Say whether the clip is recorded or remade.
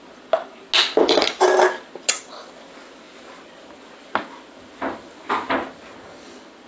recorded